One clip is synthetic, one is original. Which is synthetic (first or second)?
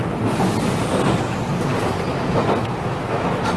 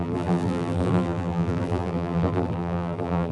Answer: second